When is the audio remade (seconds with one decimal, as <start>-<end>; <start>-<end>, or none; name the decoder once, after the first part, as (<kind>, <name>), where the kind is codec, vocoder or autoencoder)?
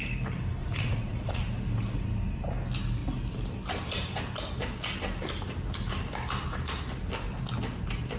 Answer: 0.6-1.4 (vocoder, Vocos)